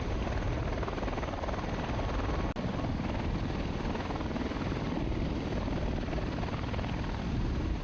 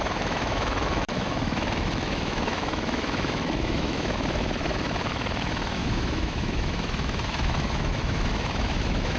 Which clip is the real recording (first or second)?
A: first